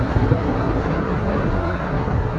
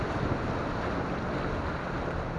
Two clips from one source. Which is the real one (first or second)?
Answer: second